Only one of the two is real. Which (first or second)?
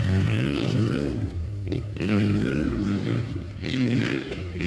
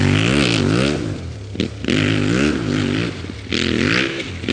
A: second